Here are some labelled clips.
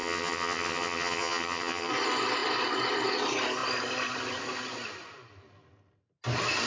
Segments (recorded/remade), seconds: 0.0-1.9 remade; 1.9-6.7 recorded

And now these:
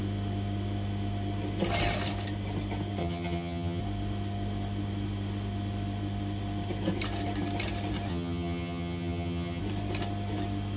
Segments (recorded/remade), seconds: 0.0-3.0 recorded; 3.0-3.8 remade; 3.8-8.1 recorded; 8.1-9.6 remade; 9.6-10.8 recorded

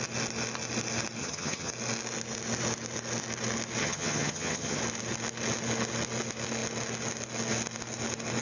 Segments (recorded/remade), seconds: 0.0-1.2 recorded; 1.2-1.7 remade; 1.7-3.8 recorded; 3.8-4.8 remade; 4.8-8.4 recorded

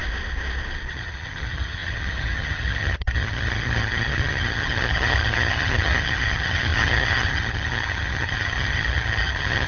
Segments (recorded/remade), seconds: 0.0-0.9 recorded; 0.9-9.7 remade

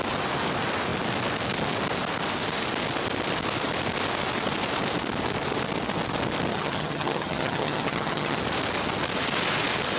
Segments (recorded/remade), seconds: 0.0-6.5 recorded; 6.5-8.4 remade; 8.4-10.0 recorded

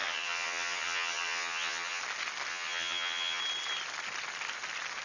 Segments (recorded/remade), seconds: 0.0-2.0 remade; 2.0-2.5 recorded; 2.5-3.4 remade; 3.4-5.0 recorded

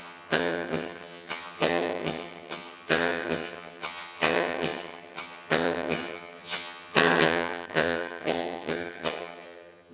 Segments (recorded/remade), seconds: 0.0-9.9 remade